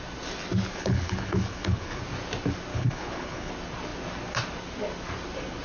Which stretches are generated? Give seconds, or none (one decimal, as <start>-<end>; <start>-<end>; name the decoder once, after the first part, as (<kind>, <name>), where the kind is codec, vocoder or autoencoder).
0.7-2.0 (codec, HILCodec); 2.7-3.5